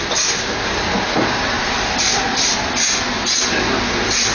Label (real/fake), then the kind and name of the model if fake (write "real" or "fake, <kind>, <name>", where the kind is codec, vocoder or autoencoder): real